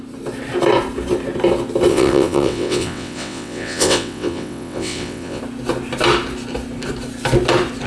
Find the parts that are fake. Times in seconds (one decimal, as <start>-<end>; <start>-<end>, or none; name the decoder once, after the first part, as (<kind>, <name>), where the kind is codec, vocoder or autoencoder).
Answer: 1.9-5.4 (vocoder, WaveNeXt)